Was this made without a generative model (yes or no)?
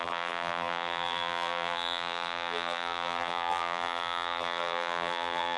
no